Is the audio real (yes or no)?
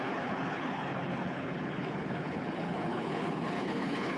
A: no